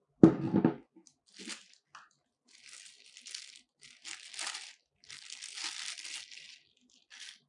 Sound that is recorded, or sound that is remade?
recorded